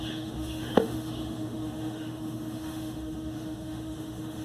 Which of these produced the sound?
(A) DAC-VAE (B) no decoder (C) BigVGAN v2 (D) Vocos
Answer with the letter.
A